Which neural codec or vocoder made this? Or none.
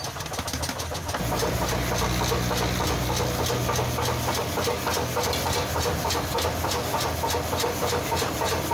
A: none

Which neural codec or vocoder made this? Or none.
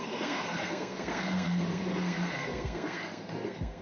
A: codec, SNAC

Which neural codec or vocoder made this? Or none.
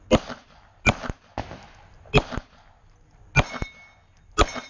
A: none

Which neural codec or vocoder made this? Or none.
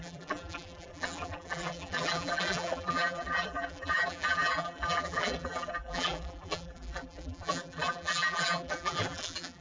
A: vocoder, BigVGAN v2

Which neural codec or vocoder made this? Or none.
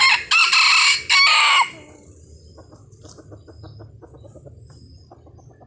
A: none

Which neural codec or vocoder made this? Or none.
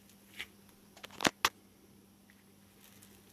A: none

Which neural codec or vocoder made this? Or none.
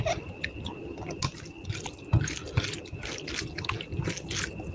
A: none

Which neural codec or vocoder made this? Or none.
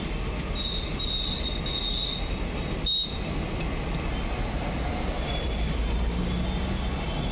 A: none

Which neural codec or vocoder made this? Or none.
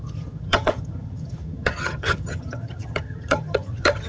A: vocoder, HiFi-GAN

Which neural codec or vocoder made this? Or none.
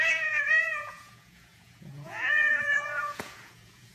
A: vocoder, Vocos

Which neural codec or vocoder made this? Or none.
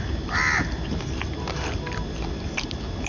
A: none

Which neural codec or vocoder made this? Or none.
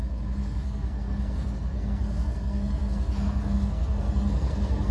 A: codec, SNAC